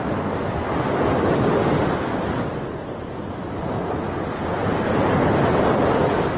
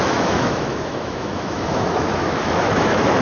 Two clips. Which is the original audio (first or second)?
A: first